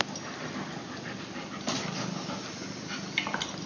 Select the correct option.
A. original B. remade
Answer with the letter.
A